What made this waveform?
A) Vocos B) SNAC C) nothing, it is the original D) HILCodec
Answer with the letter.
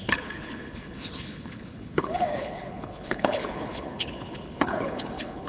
D